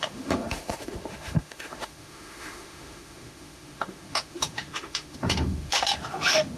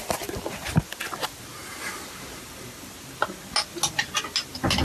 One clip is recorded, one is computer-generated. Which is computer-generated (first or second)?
first